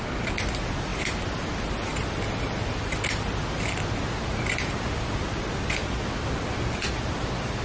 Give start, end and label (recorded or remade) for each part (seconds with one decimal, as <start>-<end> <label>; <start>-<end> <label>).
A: 0.0-7.6 recorded